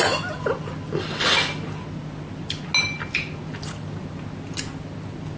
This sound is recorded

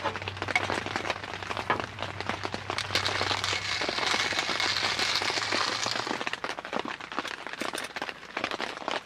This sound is recorded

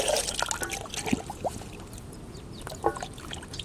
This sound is recorded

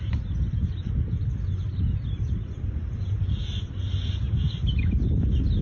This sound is recorded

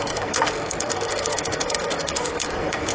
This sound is remade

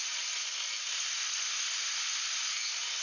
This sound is recorded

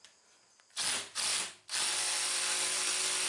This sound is recorded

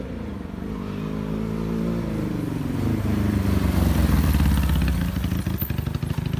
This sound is recorded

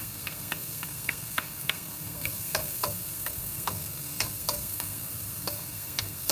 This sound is remade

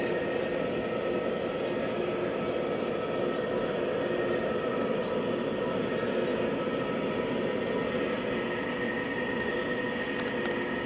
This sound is recorded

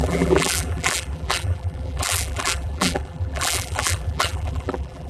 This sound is remade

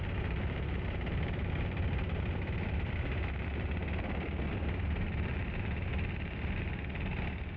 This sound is remade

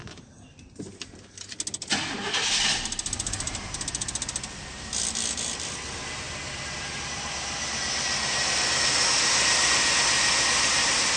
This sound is recorded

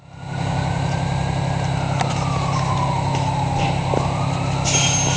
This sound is recorded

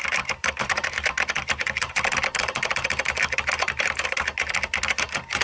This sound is remade